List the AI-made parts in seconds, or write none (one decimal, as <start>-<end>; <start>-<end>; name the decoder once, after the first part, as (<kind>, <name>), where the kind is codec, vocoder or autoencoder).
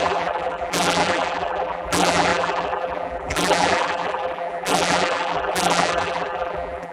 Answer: 0.0-6.9 (vocoder, BigVGAN v2)